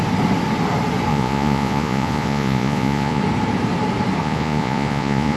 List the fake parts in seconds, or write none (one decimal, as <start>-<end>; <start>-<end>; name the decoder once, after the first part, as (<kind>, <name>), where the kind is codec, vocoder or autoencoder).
1.1-3.2 (vocoder, Vocos); 4.2-5.4